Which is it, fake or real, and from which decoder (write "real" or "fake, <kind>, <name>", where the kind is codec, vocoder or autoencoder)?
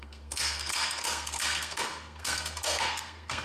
fake, codec, SNAC